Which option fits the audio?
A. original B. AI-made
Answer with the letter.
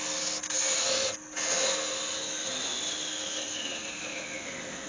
A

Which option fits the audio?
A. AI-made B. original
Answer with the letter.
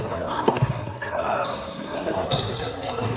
A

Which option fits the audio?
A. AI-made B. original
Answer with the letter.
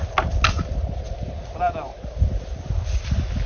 B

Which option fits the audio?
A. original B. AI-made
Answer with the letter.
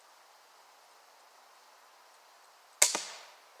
A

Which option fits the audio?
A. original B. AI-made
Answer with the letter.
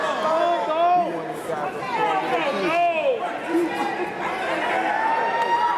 A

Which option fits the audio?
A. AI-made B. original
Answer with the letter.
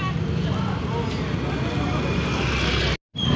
B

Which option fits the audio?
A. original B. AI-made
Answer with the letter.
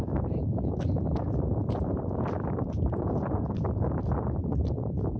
B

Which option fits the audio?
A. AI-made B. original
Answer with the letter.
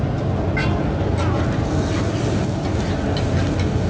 B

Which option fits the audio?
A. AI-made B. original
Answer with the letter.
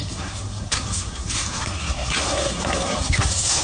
A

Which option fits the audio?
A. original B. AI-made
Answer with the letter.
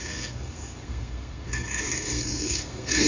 B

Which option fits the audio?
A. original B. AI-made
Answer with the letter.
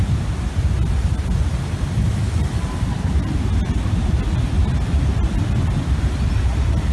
A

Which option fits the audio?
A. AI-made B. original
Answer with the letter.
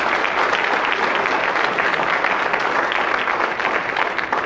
B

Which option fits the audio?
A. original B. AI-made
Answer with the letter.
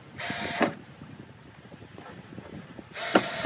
B